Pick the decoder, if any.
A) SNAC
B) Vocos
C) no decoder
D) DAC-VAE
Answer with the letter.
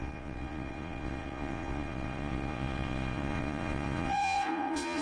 B